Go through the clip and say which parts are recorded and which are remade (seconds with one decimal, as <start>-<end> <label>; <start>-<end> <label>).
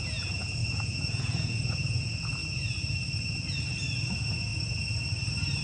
0.0-2.4 remade; 2.4-4.1 recorded; 4.1-4.5 remade; 4.5-5.6 recorded